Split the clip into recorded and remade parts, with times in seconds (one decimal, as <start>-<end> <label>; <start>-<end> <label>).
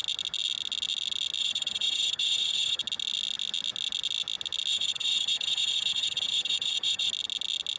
0.0-1.4 recorded; 1.4-2.8 remade; 2.8-4.7 recorded; 4.7-7.1 remade; 7.1-7.8 recorded